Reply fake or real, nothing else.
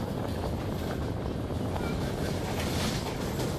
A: real